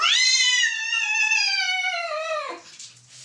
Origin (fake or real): real